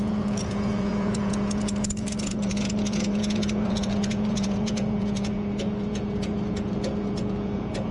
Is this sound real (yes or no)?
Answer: no